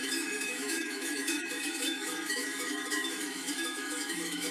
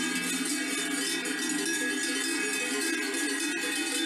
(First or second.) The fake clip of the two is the first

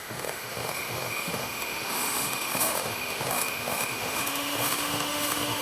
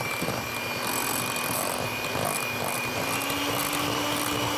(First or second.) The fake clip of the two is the first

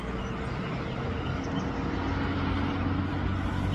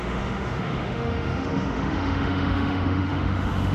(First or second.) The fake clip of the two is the second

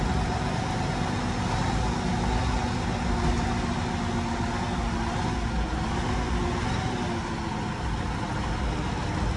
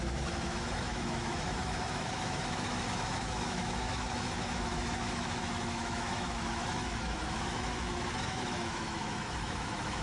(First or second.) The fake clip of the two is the second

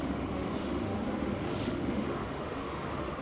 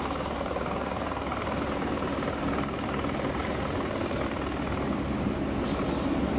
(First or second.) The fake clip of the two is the first